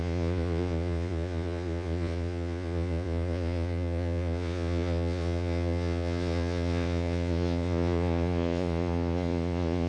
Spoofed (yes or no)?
yes